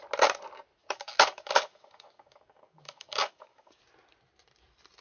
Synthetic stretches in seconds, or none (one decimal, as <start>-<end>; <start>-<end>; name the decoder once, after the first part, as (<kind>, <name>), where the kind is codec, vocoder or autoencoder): 0.8-3.8 (codec, DAC)